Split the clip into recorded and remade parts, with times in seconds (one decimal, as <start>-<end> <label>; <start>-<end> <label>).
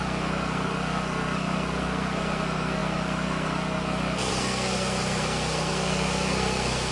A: 0.0-6.9 remade